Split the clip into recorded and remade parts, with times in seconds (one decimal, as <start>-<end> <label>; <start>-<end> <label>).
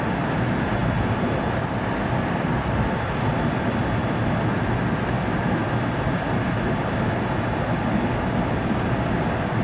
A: 0.0-9.6 recorded